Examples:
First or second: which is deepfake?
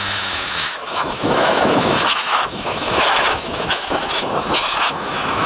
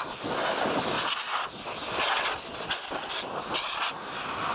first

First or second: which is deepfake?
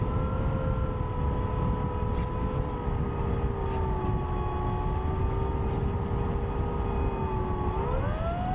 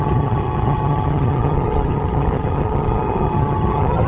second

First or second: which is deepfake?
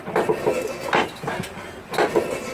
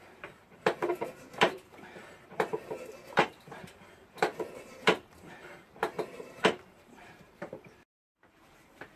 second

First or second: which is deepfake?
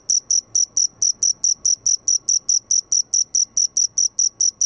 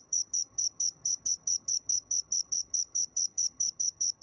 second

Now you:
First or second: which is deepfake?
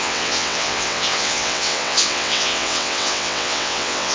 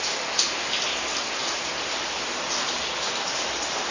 first